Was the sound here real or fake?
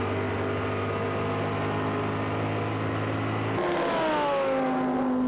real